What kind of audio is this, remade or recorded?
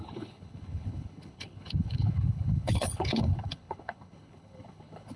remade